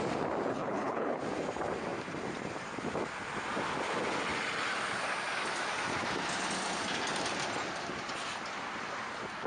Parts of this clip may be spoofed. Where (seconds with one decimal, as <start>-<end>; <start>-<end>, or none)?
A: 0.5-1.2